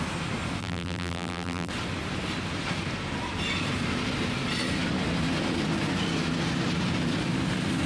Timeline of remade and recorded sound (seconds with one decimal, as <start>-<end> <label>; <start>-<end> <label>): 0.0-0.6 recorded; 0.6-1.7 remade; 1.7-7.9 recorded